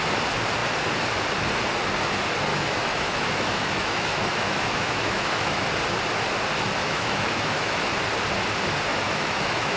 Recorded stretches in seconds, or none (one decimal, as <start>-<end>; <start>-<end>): 0.0-2.5; 5.6-6.8; 7.9-8.9